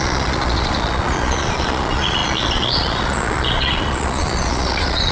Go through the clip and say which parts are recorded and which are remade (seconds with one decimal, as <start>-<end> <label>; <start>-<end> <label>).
0.0-5.1 remade